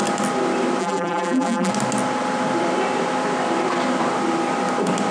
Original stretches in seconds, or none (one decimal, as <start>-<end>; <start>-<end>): 0.0-0.8; 1.7-5.1